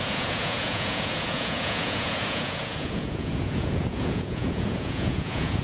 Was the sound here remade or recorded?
remade